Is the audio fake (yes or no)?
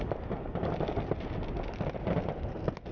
no